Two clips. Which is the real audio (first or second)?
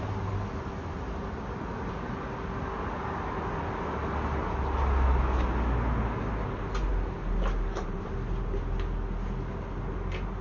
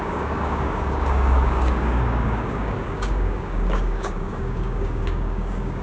first